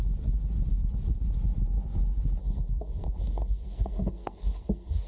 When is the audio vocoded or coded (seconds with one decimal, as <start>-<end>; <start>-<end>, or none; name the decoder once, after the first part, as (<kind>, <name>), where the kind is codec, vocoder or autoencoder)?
2.4-5.1 (codec, SNAC)